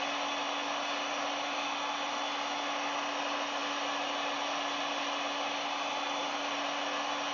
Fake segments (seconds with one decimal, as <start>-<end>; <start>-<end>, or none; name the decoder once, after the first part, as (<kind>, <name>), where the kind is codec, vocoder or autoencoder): none